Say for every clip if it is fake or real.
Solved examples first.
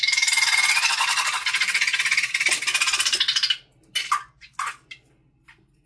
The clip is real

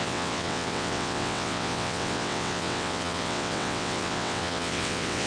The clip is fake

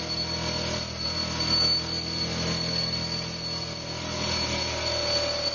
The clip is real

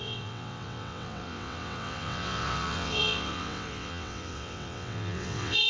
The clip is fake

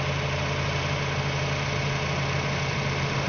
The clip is real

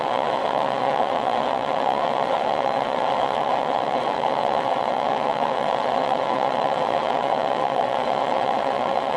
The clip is fake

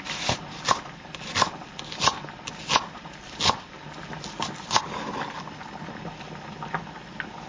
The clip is real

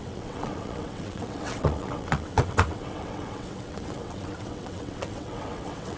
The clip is fake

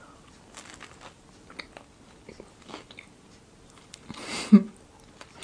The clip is real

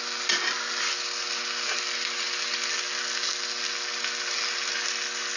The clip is real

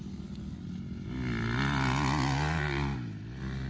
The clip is real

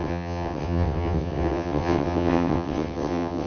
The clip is fake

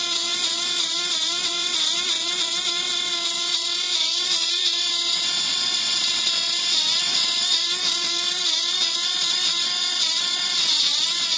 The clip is fake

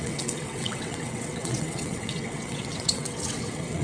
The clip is fake